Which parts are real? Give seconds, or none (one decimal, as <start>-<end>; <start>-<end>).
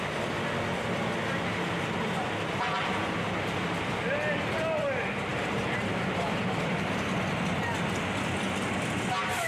0.0-5.3; 7.1-9.5